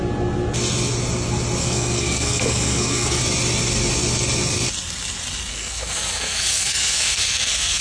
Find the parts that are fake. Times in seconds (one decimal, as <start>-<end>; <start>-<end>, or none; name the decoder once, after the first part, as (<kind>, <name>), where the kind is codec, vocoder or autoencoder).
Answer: 1.6-3.2 (codec, SNAC); 5.5-7.8